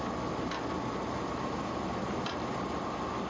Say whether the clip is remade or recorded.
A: recorded